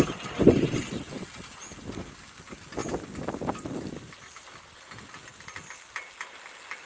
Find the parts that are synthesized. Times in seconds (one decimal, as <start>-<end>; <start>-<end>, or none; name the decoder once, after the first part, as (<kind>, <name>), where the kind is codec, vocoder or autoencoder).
none